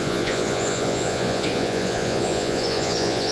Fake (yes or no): yes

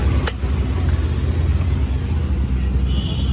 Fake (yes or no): no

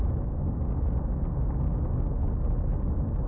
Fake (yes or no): no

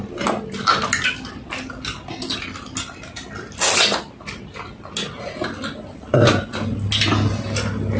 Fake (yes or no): no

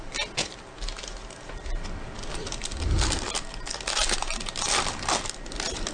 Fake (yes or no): no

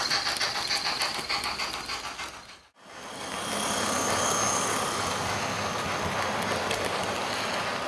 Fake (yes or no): no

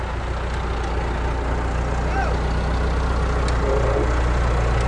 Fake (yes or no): no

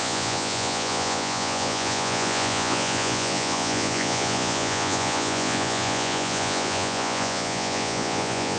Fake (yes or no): yes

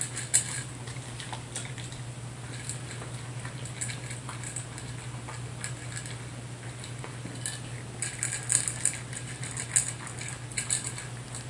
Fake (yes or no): no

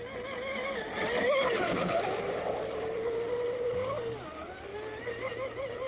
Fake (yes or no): no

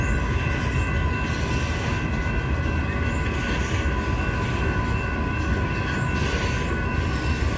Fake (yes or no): no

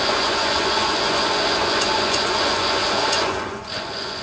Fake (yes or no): yes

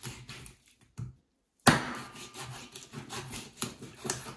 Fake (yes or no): no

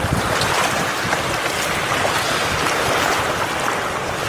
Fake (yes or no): no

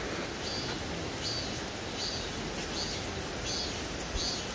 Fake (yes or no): no